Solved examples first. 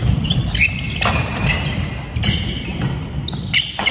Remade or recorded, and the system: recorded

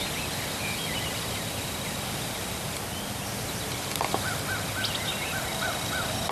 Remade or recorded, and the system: recorded